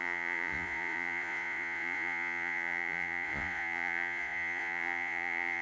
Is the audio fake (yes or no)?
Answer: yes